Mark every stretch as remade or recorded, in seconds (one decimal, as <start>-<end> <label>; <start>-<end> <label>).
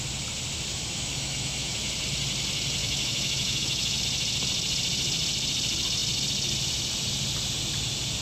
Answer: 0.0-0.7 recorded; 0.7-1.9 remade; 1.9-2.8 recorded; 2.8-4.0 remade; 4.0-8.2 recorded